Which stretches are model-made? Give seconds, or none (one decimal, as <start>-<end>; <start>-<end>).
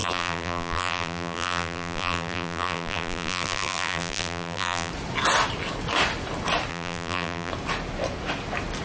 0.0-4.9; 6.7-7.5